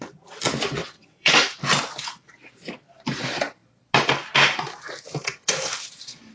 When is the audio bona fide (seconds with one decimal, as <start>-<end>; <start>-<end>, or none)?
0.0-0.8; 1.3-6.3

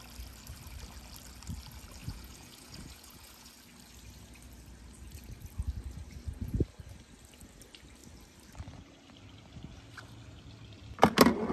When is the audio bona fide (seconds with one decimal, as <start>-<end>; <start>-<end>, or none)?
0.0-2.0; 3.5-11.5

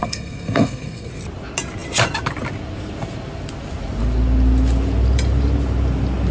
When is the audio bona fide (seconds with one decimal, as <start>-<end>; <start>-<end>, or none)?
1.1-6.3

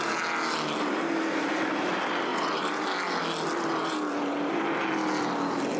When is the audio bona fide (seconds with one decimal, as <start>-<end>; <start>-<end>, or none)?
0.0-2.3; 4.7-5.8

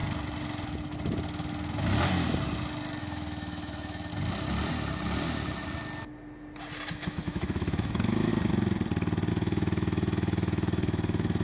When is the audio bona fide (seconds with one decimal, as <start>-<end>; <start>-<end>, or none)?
0.0-3.0; 4.1-6.9; 8.3-9.3

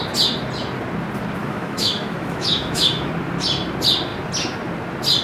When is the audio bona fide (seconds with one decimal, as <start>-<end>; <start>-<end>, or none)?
0.0-1.4; 3.1-5.2